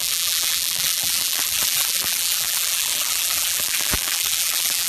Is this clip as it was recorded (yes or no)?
no